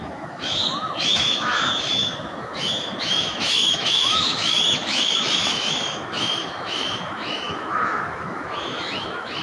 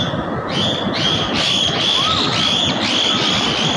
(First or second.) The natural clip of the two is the second